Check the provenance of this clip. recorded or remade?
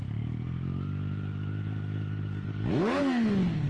remade